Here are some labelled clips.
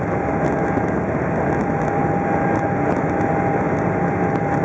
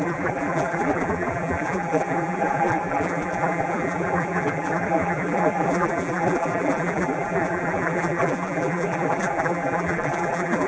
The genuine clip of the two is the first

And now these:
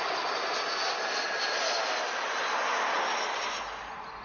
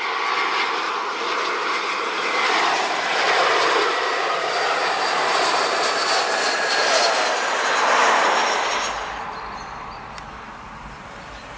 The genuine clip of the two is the first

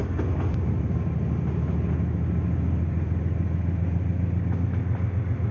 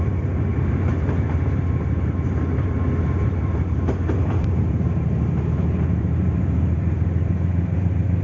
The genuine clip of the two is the first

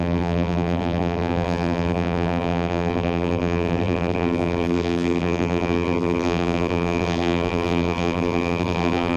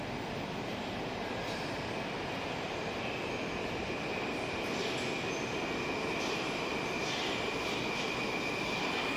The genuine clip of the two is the second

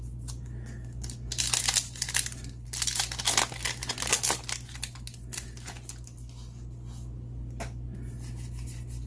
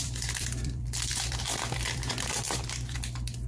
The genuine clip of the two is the first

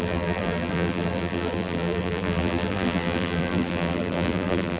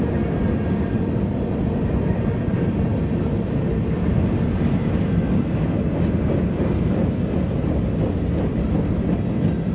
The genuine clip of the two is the second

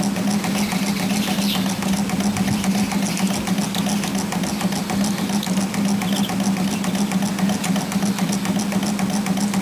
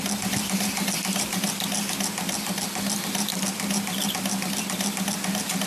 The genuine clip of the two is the first